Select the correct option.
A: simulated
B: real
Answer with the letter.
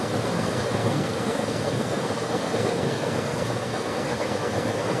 A